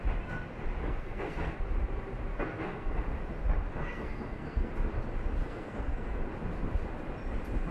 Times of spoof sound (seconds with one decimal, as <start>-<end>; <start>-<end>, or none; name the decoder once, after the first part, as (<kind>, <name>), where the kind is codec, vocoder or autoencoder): 0.8-1.6 (codec, SNAC); 2.3-3.0; 3.7-4.7; 5.4-6.2